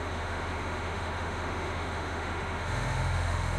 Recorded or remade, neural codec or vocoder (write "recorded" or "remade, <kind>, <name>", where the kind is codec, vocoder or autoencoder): remade, autoencoder, DAC-VAE